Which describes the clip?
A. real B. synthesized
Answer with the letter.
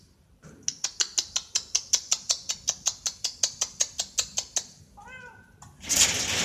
A